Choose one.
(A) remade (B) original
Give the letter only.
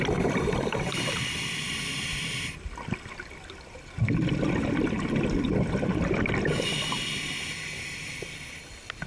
B